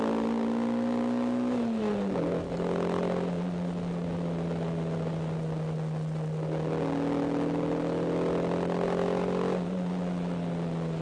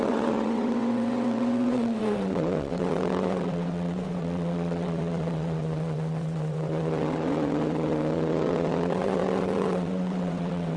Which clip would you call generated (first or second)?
second